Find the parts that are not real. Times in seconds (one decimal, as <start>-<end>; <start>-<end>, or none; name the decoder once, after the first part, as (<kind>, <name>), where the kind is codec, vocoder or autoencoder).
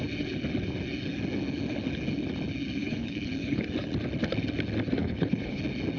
2.8-3.6 (codec, HILCodec); 5.0-5.6